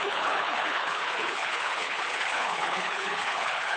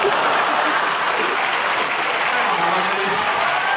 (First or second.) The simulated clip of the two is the first